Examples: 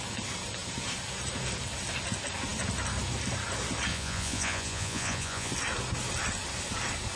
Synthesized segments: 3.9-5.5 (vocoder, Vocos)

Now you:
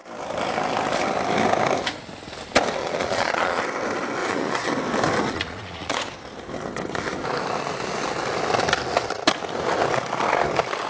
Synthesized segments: 2.8-3.6 (vocoder, Vocos); 4.2-4.7; 5.2-6.0